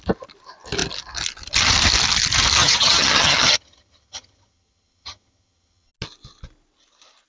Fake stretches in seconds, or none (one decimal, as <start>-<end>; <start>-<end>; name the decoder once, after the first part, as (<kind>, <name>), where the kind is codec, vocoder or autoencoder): 2.6-5.9 (vocoder, HiFi-GAN)